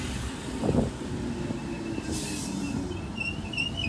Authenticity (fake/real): real